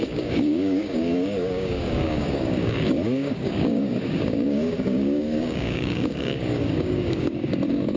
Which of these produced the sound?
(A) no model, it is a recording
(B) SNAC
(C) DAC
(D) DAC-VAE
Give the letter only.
C